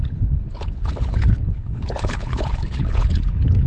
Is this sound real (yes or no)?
no